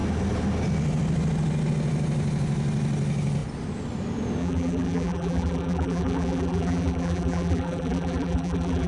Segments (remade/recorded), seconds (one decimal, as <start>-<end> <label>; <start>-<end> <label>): 0.0-4.4 recorded; 4.4-8.9 remade